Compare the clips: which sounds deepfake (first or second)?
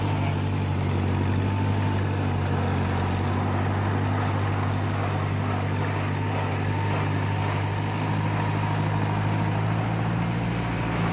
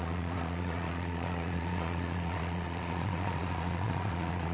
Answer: second